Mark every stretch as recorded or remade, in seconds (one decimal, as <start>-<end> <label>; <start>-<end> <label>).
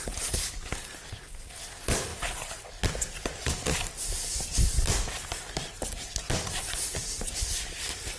0.0-2.1 recorded; 2.1-4.9 remade; 4.9-8.2 recorded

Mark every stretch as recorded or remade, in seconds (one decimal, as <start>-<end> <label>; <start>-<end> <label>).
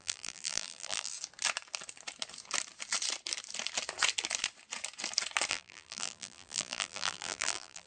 0.0-1.1 remade; 1.1-5.5 recorded; 5.5-7.9 remade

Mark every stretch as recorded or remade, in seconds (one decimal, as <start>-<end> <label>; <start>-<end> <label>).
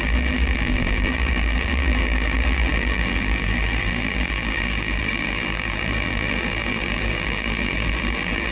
0.0-8.5 remade